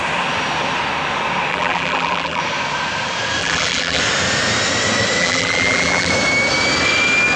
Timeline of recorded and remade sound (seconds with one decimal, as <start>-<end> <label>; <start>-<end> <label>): 0.0-1.5 recorded; 1.5-2.4 remade; 2.4-3.4 recorded; 3.4-4.0 remade; 4.0-5.2 recorded; 5.2-6.1 remade; 6.1-7.4 recorded